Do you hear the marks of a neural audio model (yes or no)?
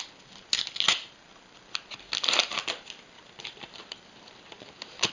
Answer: no